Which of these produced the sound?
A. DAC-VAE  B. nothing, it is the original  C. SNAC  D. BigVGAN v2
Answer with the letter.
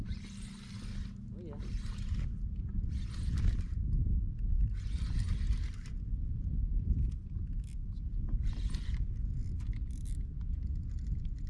B